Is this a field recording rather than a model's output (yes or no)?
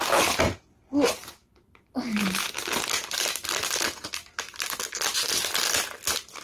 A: yes